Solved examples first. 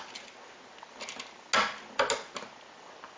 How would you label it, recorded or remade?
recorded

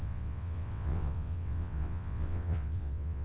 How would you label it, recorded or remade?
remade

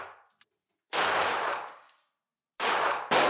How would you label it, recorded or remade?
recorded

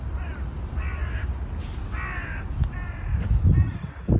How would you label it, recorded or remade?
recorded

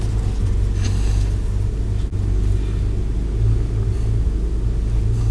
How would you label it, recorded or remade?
recorded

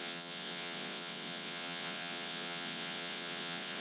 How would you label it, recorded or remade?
remade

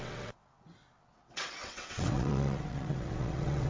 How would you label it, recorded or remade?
remade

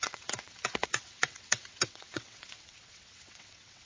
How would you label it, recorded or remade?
remade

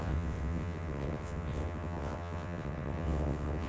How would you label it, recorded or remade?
remade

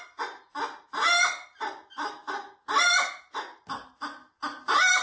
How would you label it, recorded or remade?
recorded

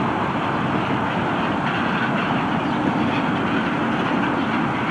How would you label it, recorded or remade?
recorded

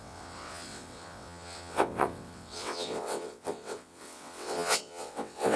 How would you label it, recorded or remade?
remade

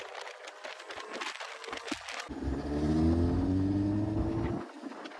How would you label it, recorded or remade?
recorded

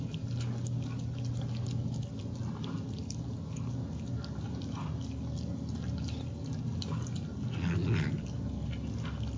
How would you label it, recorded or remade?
recorded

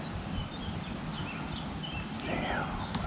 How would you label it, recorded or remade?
recorded